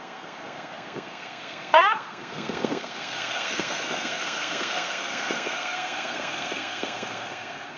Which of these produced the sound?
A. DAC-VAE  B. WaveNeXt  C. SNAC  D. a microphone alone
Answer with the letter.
C